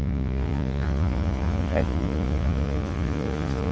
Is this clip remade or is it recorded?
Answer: remade